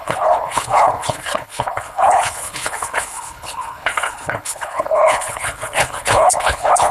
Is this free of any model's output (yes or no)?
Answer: no